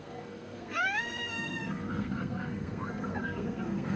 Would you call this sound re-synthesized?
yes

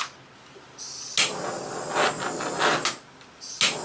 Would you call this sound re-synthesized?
no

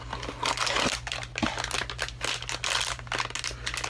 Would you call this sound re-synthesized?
no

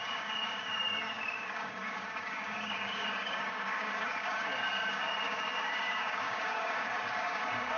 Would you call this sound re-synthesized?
yes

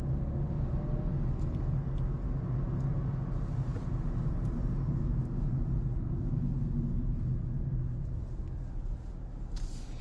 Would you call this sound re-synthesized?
no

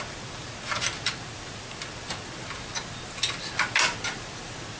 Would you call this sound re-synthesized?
no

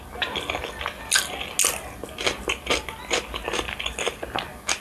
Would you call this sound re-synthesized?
no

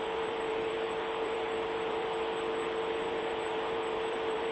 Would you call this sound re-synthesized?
yes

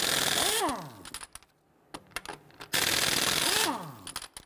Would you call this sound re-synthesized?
no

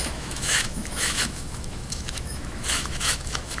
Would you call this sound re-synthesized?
yes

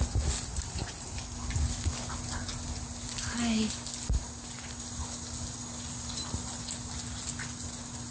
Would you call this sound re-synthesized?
no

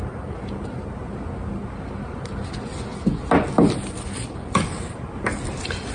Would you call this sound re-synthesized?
no